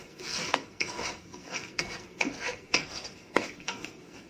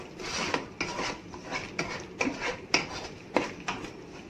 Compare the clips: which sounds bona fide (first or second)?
second